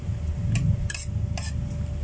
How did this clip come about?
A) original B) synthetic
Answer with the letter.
A